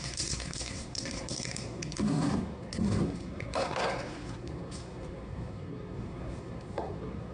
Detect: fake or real fake